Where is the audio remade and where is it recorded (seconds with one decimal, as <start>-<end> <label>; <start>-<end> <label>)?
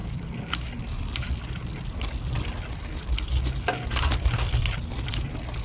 0.0-5.6 recorded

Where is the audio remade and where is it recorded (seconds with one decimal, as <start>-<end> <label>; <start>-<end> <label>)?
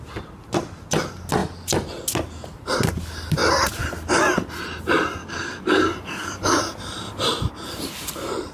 0.0-5.2 recorded; 5.2-6.6 remade; 6.6-8.5 recorded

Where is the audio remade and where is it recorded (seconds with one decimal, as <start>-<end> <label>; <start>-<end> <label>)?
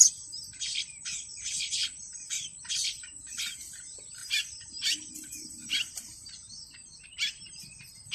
0.0-8.1 recorded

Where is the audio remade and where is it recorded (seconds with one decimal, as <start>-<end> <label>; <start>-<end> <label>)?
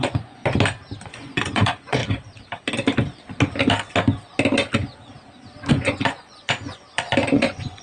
0.0-0.4 remade; 0.4-1.1 recorded; 1.1-2.0 remade; 2.0-5.7 recorded; 5.7-7.8 remade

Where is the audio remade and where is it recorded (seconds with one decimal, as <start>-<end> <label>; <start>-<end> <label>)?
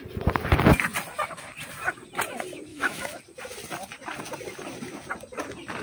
0.0-2.7 recorded; 2.7-3.2 remade; 3.2-5.8 recorded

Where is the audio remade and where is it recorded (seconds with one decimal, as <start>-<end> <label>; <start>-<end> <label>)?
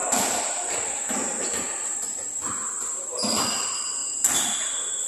0.0-3.1 remade; 3.1-5.1 recorded